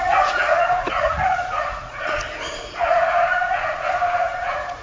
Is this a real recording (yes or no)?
no